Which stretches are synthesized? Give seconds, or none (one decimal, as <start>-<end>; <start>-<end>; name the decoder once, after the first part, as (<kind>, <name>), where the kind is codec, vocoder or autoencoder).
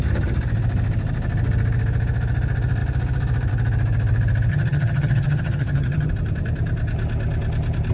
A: 4.5-6.1 (vocoder, HiFi-GAN)